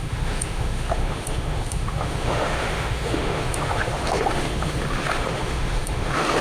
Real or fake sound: fake